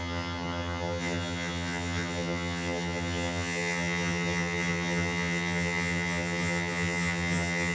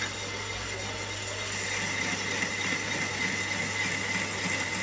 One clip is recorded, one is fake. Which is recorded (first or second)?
second